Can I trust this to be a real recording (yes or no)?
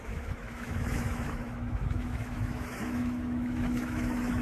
no